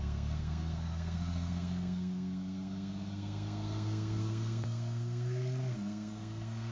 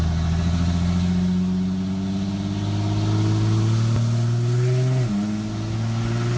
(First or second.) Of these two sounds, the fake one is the first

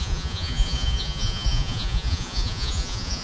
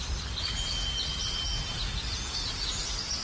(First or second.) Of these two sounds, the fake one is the first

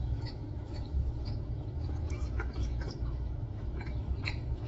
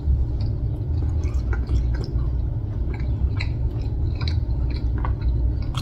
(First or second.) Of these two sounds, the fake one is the first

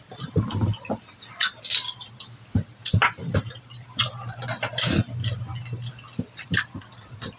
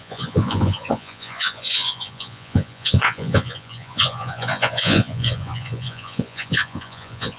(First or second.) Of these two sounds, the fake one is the second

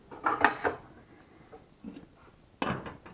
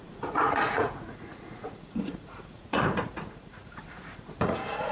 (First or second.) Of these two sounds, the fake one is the second